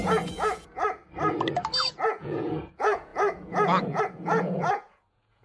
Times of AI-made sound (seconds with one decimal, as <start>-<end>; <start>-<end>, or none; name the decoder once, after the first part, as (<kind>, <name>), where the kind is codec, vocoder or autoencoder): 0.0-1.0 (vocoder, Vocos); 1.8-5.4